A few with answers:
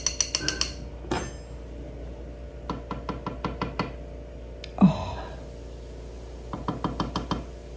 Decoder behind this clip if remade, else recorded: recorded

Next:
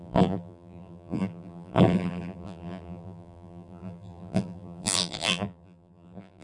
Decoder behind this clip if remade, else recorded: remade, vocoder, BigVGAN v2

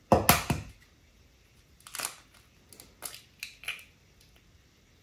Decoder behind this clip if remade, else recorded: recorded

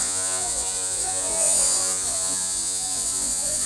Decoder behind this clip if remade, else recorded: remade, vocoder, Vocos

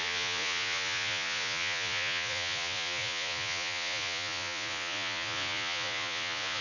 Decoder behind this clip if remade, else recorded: remade, vocoder, Vocos